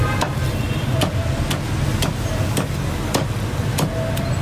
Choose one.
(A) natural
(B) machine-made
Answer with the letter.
A